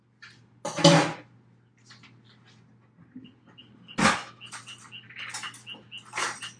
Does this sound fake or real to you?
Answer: real